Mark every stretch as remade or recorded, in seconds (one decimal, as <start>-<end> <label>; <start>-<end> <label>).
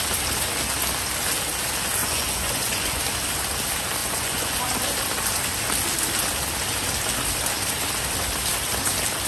0.0-2.0 recorded; 2.0-3.0 remade; 3.0-4.0 recorded; 4.0-4.6 remade; 4.6-9.3 recorded